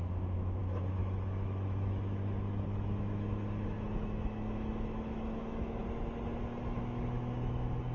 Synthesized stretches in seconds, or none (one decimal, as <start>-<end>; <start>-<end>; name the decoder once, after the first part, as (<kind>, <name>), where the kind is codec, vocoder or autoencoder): 0.0-5.8 (autoencoder, DAC-VAE); 6.6-7.9